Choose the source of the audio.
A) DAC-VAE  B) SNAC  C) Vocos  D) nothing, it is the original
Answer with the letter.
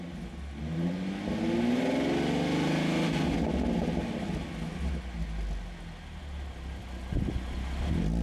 D